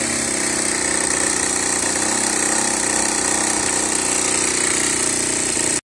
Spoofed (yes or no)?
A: no